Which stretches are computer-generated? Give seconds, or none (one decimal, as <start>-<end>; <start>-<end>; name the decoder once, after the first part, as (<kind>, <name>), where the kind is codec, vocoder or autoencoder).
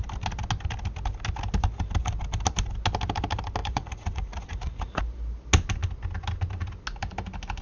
3.6-5.0 (vocoder, Vocos)